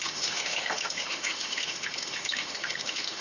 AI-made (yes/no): yes